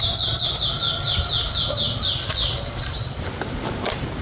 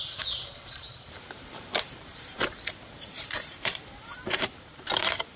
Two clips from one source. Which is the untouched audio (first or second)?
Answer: first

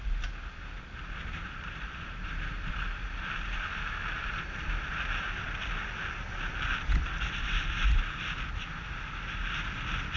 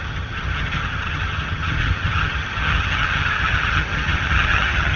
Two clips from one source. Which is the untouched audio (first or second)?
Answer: first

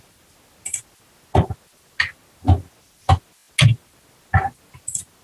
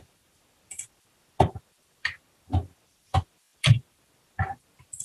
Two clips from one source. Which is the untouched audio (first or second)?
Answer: first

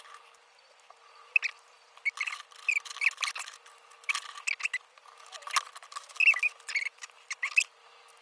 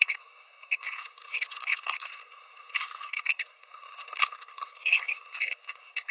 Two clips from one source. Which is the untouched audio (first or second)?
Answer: first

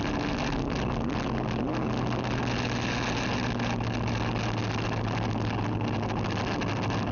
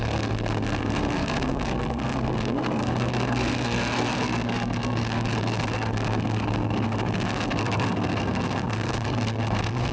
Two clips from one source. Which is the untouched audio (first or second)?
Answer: first